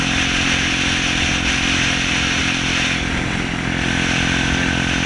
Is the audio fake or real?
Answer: real